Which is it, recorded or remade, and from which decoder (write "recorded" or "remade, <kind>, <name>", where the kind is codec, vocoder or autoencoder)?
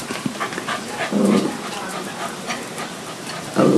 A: recorded